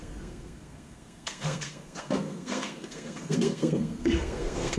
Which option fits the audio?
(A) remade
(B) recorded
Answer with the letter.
A